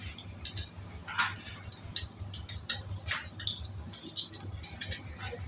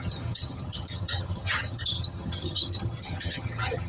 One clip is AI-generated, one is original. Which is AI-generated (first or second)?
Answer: second